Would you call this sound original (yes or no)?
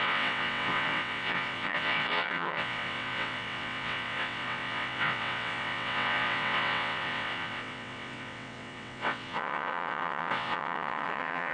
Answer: no